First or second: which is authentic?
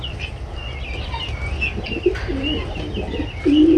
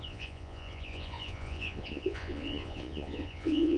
first